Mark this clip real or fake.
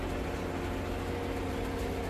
real